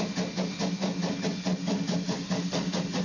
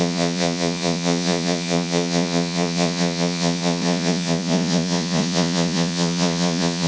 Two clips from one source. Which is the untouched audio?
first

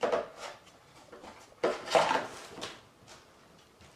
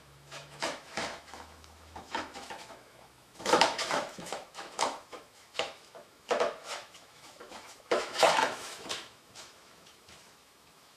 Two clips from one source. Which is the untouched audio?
first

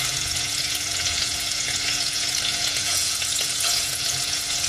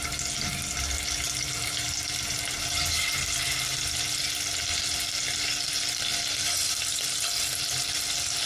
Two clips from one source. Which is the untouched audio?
second